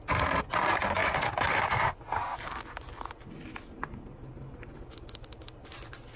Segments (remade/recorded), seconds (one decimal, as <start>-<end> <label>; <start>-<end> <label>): 0.0-6.2 recorded